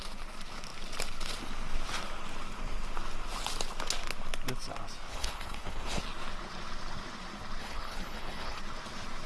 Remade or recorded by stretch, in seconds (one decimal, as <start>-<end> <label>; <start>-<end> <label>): 0.0-5.1 recorded; 5.1-6.0 remade; 6.0-7.6 recorded; 7.6-8.6 remade; 8.6-9.3 recorded